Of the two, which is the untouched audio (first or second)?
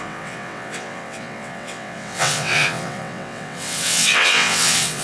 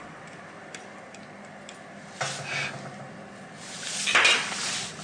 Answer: second